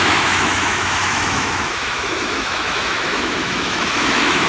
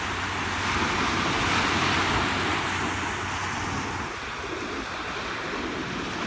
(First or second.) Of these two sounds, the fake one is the first